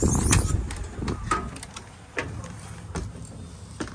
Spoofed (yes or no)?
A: no